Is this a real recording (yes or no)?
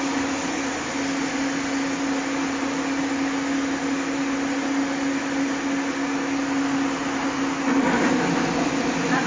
yes